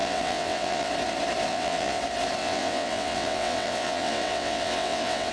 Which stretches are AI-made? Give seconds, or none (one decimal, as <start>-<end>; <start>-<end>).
0.0-0.9; 1.5-2.0; 2.4-5.3